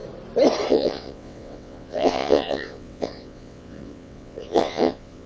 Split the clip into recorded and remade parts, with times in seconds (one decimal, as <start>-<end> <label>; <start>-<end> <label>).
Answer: 0.0-0.7 recorded; 0.7-5.3 remade